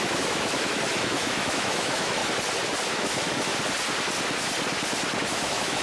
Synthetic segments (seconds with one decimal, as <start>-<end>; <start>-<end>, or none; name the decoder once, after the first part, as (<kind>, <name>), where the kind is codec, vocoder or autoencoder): 0.0-2.2 (autoencoder, DAC-VAE); 2.9-3.5; 5.2-5.8